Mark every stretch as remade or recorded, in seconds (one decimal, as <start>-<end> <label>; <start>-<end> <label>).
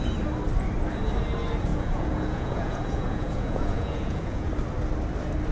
0.0-1.7 recorded; 1.7-4.5 remade; 4.5-5.5 recorded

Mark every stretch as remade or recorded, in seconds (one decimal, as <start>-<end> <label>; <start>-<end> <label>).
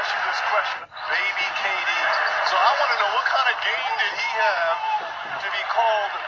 0.0-6.3 recorded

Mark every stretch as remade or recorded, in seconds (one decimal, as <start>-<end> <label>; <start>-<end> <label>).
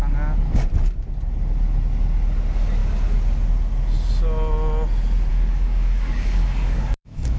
0.0-5.3 recorded; 5.3-7.4 remade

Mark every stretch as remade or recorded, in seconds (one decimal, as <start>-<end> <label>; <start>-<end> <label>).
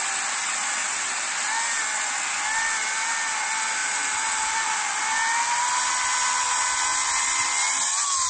0.0-0.8 recorded; 0.8-1.3 remade; 1.3-3.8 recorded; 3.8-5.0 remade; 5.0-8.3 recorded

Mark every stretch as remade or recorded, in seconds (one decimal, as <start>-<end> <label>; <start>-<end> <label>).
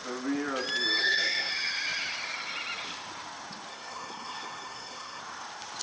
0.0-1.0 recorded; 1.0-1.5 remade; 1.5-3.7 recorded; 3.7-5.2 remade; 5.2-5.8 recorded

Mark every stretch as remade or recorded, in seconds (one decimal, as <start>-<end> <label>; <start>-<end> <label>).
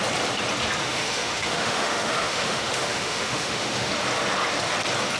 0.0-0.8 recorded; 0.8-3.9 remade; 3.9-5.2 recorded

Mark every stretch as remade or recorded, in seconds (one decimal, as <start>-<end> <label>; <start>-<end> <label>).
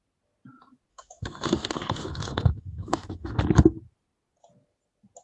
0.0-0.9 recorded; 0.9-3.4 remade; 3.4-5.2 recorded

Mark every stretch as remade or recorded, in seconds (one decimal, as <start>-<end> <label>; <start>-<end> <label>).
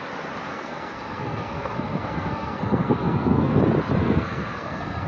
0.0-0.5 recorded; 0.5-3.6 remade; 3.6-4.0 recorded; 4.0-5.1 remade